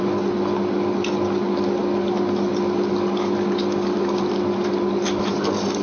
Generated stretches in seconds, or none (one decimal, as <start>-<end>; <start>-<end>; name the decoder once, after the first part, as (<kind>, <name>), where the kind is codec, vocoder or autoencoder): none